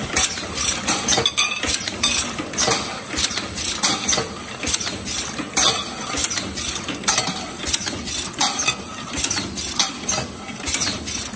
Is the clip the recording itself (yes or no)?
yes